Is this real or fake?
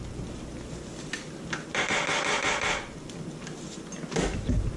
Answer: real